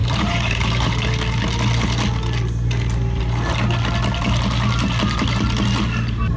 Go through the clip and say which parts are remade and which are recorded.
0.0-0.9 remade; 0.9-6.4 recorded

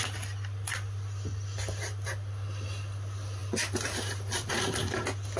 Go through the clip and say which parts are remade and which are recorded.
0.0-3.4 recorded; 3.4-5.0 remade; 5.0-5.4 recorded

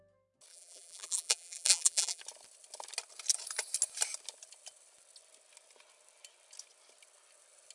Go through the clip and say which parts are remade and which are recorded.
0.0-0.5 recorded; 0.5-2.2 remade; 2.2-7.7 recorded

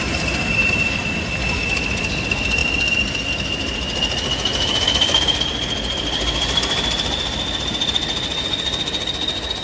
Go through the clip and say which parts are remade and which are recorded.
0.0-0.6 recorded; 0.6-1.2 remade; 1.2-2.6 recorded; 2.6-3.3 remade; 3.3-4.5 recorded; 4.5-7.6 remade; 7.6-9.6 recorded

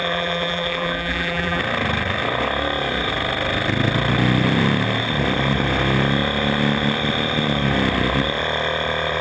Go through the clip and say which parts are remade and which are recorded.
0.0-1.6 remade; 1.6-9.2 recorded